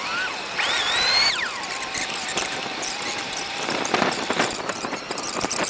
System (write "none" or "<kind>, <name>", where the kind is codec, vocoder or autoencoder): vocoder, BigVGAN v2